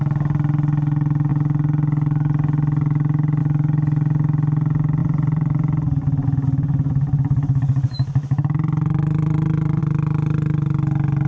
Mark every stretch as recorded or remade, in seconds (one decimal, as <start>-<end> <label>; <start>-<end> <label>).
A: 0.0-5.0 recorded; 5.0-9.8 remade; 9.8-11.3 recorded

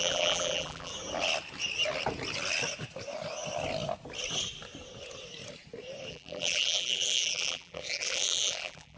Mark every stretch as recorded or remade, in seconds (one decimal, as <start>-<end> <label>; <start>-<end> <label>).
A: 0.0-0.9 remade; 0.9-6.1 recorded; 6.1-9.0 remade

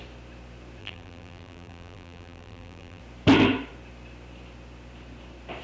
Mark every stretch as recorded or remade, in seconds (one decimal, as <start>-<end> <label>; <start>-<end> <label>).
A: 0.0-0.8 recorded; 0.8-3.0 remade; 3.0-5.6 recorded

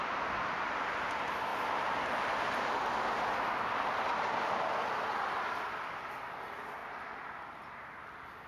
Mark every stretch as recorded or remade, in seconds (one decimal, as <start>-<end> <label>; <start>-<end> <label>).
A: 0.0-1.5 recorded; 1.5-5.6 remade; 5.6-8.5 recorded

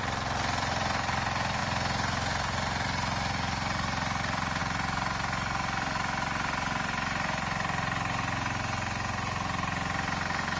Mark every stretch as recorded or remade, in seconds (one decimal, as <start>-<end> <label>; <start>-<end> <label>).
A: 0.0-10.6 remade

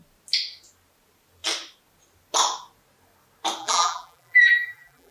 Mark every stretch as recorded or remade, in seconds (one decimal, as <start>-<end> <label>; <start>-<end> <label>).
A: 0.0-3.6 recorded; 3.6-5.1 remade

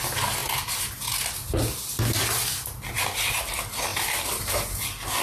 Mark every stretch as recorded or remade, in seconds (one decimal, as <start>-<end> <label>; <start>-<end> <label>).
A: 0.0-3.9 recorded; 3.9-5.2 remade